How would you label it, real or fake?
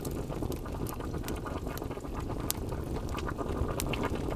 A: real